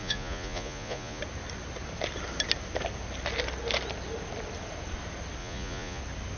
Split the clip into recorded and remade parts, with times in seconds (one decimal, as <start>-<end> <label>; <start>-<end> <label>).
0.0-1.2 remade; 1.2-5.4 recorded; 5.4-6.0 remade; 6.0-6.4 recorded